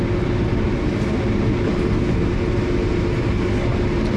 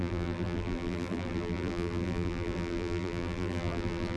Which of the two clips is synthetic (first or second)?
second